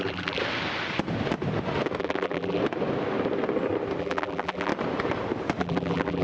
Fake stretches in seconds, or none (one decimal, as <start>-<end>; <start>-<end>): 0.0-0.4; 2.0-2.6; 4.0-4.7; 5.6-6.2

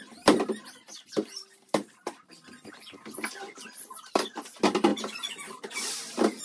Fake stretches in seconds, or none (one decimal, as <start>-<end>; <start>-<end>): 0.6-4.4

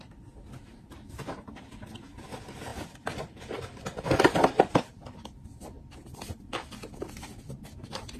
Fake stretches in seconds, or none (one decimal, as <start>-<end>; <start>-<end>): 2.7-7.6

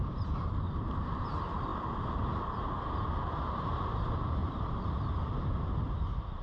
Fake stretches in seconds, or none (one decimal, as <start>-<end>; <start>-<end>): 0.0-1.7; 3.2-4.4; 5.2-6.4

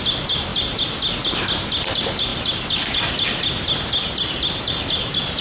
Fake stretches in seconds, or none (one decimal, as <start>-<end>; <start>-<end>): none

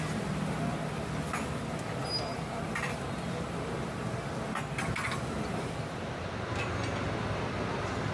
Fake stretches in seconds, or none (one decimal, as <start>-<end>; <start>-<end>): 2.3-3.0

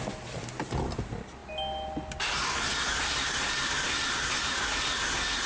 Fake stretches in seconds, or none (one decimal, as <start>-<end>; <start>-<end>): none

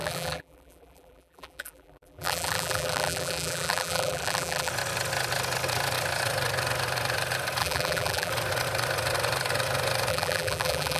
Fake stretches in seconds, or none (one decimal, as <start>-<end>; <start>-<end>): 0.0-4.7; 7.6-8.3; 10.1-11.0